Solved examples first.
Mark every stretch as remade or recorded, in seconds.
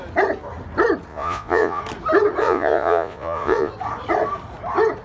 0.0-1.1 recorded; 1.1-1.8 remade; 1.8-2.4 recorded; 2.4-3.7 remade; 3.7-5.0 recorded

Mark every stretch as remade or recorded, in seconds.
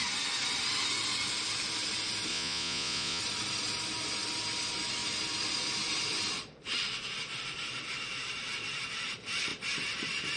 0.0-2.3 recorded; 2.3-3.2 remade; 3.2-10.4 recorded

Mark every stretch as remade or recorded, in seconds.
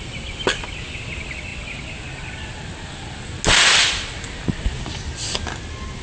0.0-6.0 recorded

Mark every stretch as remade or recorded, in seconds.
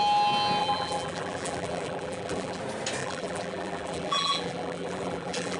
0.0-0.6 recorded; 0.6-2.6 remade; 2.6-3.0 recorded; 3.0-5.6 remade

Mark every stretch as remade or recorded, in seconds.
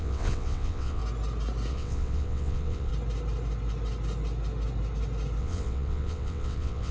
0.0-1.0 remade; 1.0-1.7 recorded; 1.7-2.9 remade; 2.9-5.4 recorded; 5.4-6.9 remade